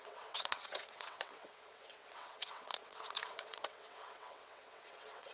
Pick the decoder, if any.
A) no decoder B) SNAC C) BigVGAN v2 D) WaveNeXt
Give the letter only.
D